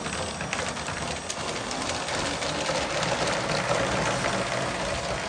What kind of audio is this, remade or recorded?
recorded